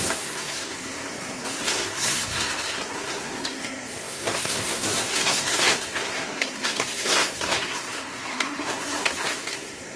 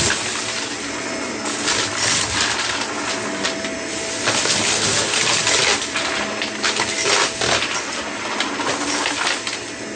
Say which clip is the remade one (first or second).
first